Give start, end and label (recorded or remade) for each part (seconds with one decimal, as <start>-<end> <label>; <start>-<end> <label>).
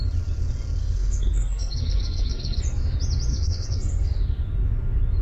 0.0-0.8 recorded; 0.8-2.6 remade; 2.6-3.3 recorded; 3.3-4.2 remade; 4.2-5.2 recorded